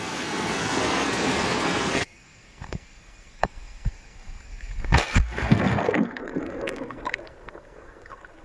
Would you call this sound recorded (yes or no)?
no